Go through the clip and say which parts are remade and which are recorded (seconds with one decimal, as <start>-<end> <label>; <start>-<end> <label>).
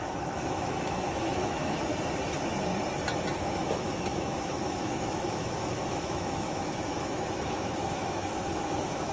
0.0-1.9 remade; 1.9-3.4 recorded; 3.4-9.1 remade